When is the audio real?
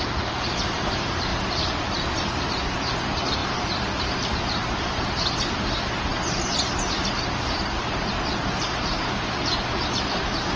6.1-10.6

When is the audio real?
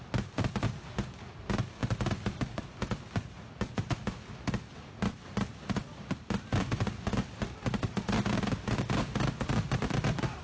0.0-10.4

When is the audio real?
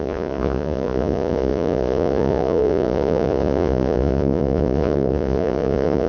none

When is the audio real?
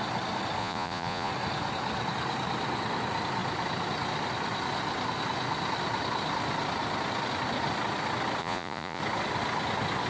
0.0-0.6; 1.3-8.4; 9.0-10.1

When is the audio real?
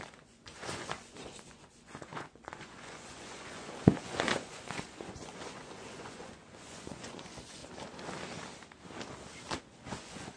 7.6-9.6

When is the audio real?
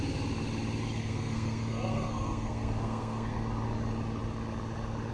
0.0-1.0; 3.4-5.1